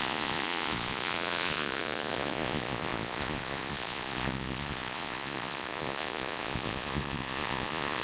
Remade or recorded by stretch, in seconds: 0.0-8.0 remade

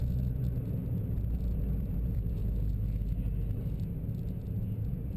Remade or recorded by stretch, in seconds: 0.0-0.4 remade; 0.4-1.5 recorded; 1.5-2.4 remade; 2.4-4.6 recorded; 4.6-5.2 remade

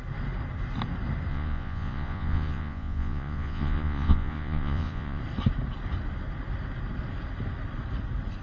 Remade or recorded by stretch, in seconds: 0.0-1.3 recorded; 1.3-5.2 remade; 5.2-8.4 recorded

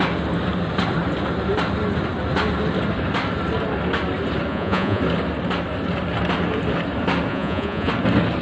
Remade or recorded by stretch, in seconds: 0.0-4.5 recorded; 4.5-5.0 remade; 5.0-7.3 recorded; 7.3-7.9 remade; 7.9-8.4 recorded

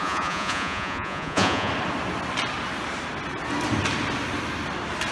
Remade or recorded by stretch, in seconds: 0.0-1.7 remade; 1.7-5.1 recorded